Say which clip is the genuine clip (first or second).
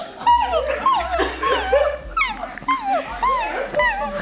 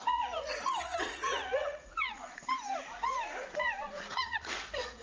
first